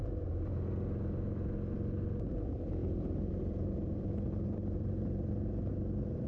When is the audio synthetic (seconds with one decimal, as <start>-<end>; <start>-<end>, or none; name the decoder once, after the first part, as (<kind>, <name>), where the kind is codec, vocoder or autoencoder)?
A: 2.3-6.3 (vocoder, BigVGAN v2)